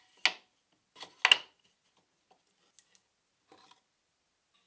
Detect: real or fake real